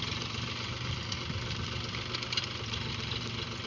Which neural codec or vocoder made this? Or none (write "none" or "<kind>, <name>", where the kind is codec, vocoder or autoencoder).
none